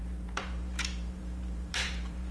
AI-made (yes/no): yes